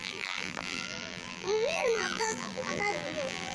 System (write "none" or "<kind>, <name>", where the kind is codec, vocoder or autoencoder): vocoder, BigVGAN v2